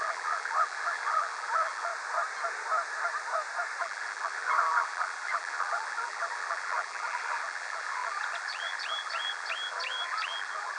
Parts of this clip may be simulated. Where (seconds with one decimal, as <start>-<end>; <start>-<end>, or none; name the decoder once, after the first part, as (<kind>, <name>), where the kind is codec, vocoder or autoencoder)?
0.0-1.9 (vocoder, BigVGAN v2); 3.8-10.8